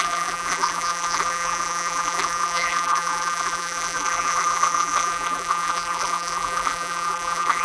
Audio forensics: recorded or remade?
remade